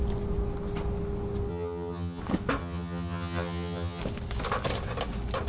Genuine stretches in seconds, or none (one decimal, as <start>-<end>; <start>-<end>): 0.0-1.5; 2.2-2.6; 4.0-5.5